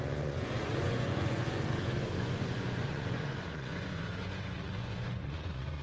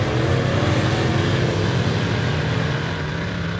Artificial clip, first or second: first